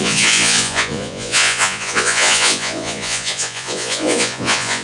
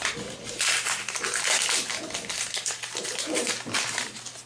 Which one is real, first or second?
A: second